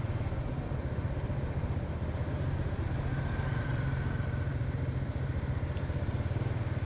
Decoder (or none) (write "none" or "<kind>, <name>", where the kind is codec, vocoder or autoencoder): none